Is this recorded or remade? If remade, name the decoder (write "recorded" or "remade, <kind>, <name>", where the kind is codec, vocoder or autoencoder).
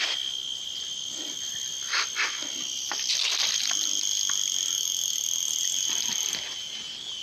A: recorded